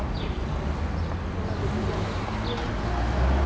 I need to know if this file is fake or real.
real